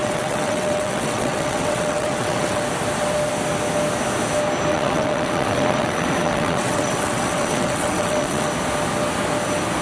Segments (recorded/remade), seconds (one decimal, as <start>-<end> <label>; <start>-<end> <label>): 0.0-2.6 remade; 2.6-4.7 recorded; 4.7-8.5 remade; 8.5-9.8 recorded